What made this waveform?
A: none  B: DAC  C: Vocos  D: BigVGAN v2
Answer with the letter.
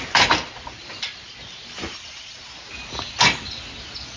A